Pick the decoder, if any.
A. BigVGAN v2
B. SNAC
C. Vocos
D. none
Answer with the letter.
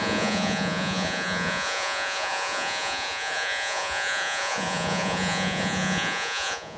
C